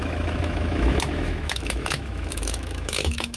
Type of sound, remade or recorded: remade